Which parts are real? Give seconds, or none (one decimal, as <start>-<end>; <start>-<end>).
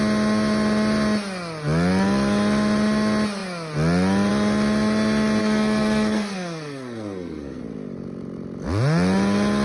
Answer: 0.0-5.4; 7.6-9.6